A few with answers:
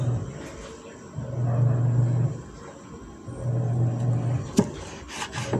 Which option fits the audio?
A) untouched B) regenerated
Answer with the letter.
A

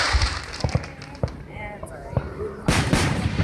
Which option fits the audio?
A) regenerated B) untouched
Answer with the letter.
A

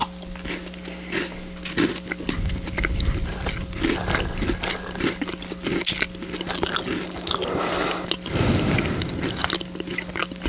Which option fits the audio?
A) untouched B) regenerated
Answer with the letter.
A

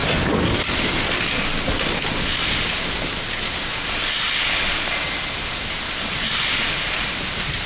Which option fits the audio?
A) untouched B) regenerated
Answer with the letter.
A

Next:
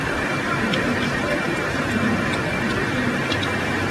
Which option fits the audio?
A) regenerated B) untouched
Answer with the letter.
B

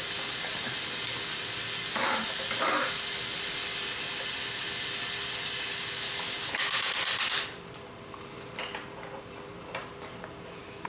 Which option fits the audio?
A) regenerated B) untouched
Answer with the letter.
B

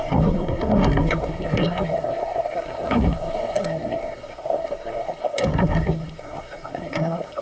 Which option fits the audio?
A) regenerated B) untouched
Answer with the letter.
A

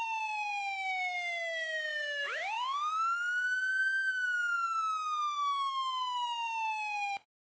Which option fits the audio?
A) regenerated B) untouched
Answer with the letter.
A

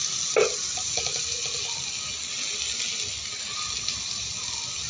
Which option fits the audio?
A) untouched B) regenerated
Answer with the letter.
A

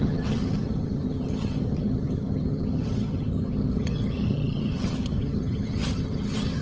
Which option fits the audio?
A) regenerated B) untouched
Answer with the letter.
A